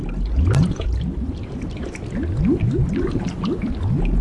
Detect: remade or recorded recorded